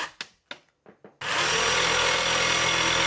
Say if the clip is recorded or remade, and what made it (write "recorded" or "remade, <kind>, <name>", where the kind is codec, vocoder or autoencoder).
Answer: recorded